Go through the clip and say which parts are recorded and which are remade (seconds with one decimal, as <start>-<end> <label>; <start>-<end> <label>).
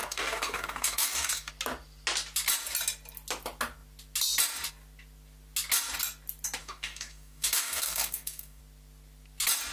0.0-1.5 remade; 1.5-6.6 recorded; 6.6-8.6 remade; 8.6-9.7 recorded